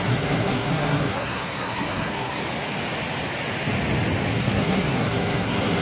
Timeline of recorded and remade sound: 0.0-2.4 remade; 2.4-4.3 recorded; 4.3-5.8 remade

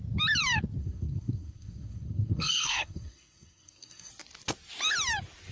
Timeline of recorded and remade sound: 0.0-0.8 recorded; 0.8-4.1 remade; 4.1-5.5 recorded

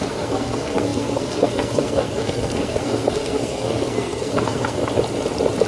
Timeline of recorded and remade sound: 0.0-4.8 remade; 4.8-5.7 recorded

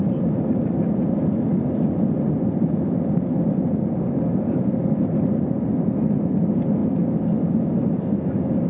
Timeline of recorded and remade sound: 0.0-8.7 recorded

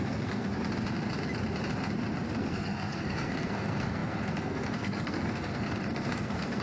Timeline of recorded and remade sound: 0.0-0.5 remade; 0.5-2.4 recorded; 2.4-6.6 remade

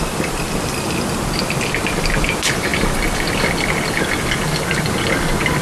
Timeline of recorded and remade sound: 0.0-5.6 recorded